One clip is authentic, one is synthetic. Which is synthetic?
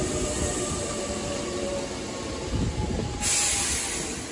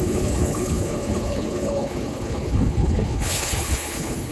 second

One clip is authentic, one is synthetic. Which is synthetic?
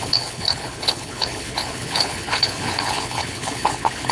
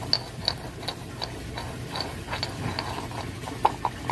first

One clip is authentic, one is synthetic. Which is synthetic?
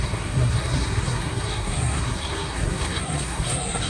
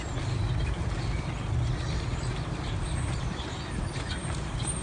first